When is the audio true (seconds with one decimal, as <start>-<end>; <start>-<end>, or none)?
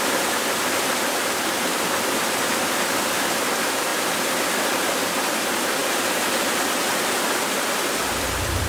3.9-4.4